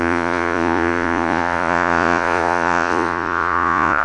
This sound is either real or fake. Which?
fake